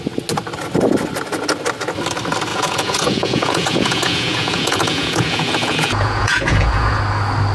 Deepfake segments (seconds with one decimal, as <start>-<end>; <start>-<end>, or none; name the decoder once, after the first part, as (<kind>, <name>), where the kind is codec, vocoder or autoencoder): 2.5-7.0 (vocoder, Vocos)